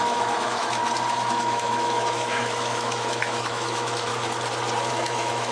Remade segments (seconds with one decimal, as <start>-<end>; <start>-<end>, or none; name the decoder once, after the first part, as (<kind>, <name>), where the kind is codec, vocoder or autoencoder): 0.0-0.8 (autoencoder, DAC-VAE); 1.3-4.1; 4.9-5.5